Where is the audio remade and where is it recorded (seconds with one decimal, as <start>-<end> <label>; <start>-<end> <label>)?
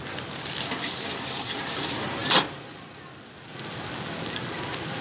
0.0-5.0 recorded